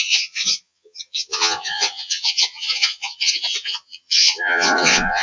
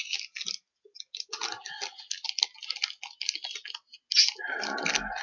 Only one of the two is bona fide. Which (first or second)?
second